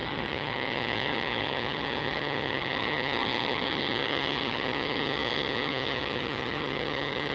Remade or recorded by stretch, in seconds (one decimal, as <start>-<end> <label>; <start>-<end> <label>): 0.0-7.3 remade